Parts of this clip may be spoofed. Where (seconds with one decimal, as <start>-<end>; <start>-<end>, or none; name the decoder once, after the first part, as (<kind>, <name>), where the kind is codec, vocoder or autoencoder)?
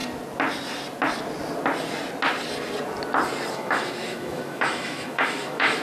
3.5-5.8 (autoencoder, DAC-VAE)